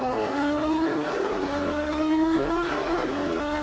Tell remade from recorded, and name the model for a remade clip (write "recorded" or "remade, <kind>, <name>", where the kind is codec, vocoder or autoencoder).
remade, codec, SNAC